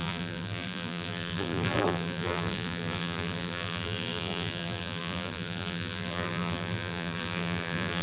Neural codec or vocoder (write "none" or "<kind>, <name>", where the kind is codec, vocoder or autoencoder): vocoder, BigVGAN v2